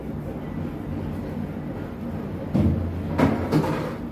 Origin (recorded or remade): recorded